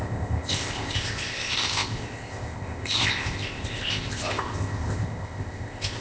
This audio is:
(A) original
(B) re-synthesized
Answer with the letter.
B